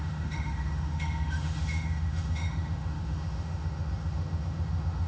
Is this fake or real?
fake